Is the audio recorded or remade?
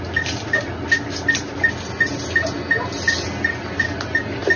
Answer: recorded